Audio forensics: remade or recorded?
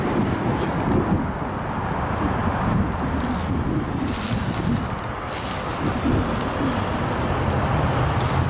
recorded